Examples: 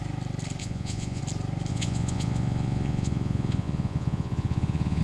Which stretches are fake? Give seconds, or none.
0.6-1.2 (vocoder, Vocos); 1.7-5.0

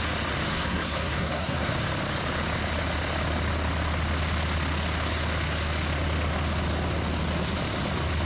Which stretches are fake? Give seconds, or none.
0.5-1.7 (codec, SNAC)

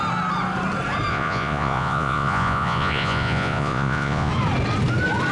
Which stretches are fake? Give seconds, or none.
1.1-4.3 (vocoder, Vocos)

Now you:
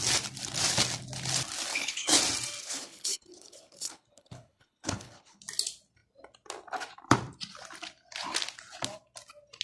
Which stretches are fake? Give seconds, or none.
1.7-2.2 (codec, HILCodec); 2.6-5.4

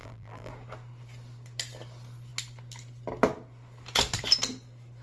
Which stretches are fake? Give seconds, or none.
0.0-0.5 (vocoder, BigVGAN v2)

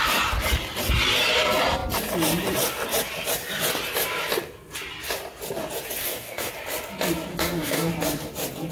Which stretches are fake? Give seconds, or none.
6.0-6.5 (codec, DAC); 7.3-7.9